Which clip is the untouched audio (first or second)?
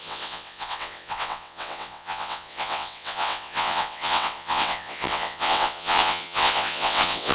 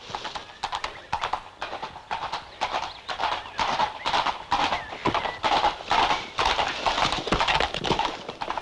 second